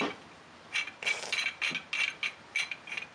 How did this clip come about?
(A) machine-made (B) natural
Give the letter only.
B